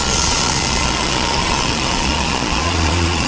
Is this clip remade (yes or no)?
yes